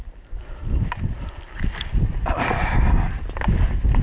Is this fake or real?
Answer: real